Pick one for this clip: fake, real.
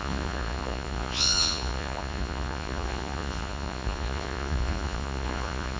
fake